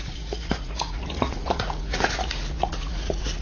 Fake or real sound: fake